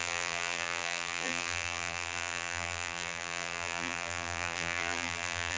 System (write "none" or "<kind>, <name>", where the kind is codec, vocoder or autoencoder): vocoder, BigVGAN v2